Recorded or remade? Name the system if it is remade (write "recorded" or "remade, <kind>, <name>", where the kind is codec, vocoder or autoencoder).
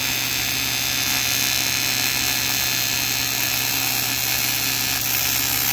recorded